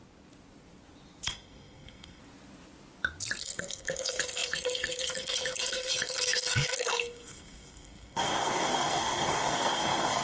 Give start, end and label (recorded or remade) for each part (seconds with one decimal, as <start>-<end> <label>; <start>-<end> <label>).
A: 0.0-1.3 recorded; 1.3-2.2 remade; 2.2-3.4 recorded; 3.4-10.2 remade